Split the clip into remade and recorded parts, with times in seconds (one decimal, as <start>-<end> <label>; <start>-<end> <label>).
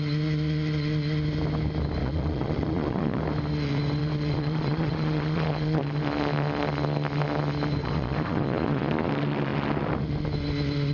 0.0-2.0 recorded; 2.0-3.2 remade; 3.2-4.0 recorded; 4.0-5.8 remade; 5.8-7.8 recorded; 7.8-9.1 remade; 9.1-10.9 recorded